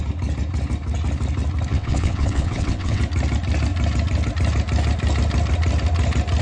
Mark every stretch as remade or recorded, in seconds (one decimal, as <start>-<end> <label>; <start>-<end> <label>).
0.0-1.7 recorded; 1.7-3.0 remade; 3.0-6.4 recorded